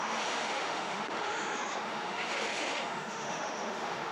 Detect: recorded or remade remade